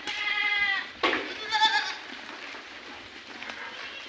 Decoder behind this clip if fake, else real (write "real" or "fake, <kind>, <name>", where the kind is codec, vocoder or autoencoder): real